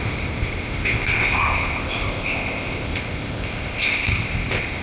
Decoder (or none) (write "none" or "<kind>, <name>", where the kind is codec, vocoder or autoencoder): codec, ZipCodec